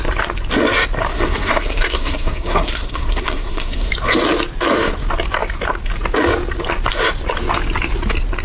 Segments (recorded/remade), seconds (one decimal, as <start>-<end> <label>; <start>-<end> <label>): 0.0-1.1 recorded; 1.1-3.9 remade; 3.9-8.4 recorded